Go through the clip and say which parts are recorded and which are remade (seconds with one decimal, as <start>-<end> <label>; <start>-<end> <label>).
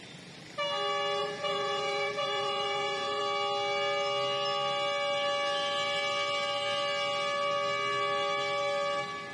0.0-1.2 recorded; 1.2-3.2 remade; 3.2-9.3 recorded